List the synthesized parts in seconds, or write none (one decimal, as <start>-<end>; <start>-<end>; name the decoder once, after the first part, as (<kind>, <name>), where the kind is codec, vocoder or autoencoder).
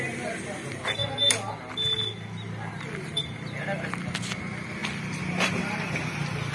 4.8-5.6 (vocoder, BigVGAN v2)